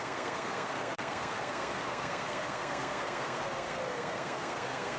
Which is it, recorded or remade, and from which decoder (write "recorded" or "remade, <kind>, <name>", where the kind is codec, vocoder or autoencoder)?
remade, codec, SNAC